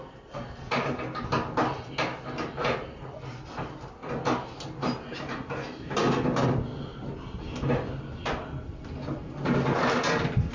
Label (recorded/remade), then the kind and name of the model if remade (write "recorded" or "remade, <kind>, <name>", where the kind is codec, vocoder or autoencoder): recorded